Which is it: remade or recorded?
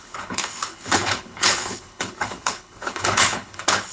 remade